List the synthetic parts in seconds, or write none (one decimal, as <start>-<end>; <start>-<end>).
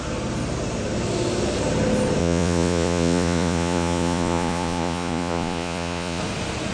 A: 2.2-6.2